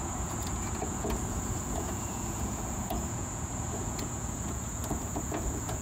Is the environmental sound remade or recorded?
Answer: remade